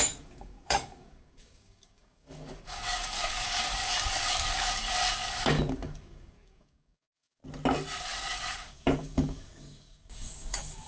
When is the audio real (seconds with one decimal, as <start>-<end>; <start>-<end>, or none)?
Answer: 7.4-8.0